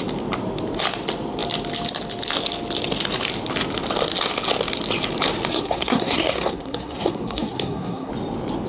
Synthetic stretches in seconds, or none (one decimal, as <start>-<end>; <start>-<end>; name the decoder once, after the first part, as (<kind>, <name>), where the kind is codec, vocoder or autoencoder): 5.5-8.1 (codec, SNAC)